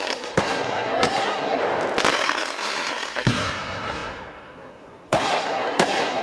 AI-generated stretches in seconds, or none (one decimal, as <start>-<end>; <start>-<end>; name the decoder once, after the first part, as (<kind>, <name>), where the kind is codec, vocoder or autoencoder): 0.0-1.6 (codec, SNAC); 2.1-6.2